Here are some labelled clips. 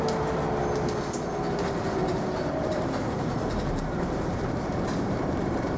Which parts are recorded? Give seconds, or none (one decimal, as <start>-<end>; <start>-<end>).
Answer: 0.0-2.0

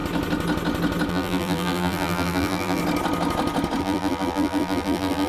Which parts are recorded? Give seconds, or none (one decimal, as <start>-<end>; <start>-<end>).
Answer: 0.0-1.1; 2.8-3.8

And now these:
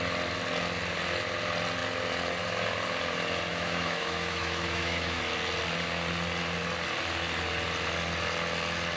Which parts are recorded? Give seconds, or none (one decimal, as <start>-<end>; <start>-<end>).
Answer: 0.0-3.5; 5.2-9.0